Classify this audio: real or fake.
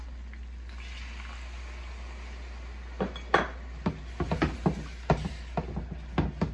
real